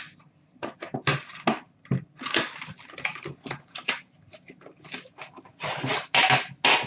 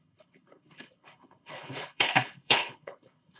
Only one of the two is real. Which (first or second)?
first